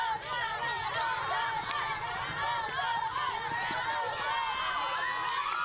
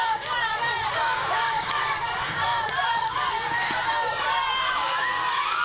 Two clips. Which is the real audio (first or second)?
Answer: first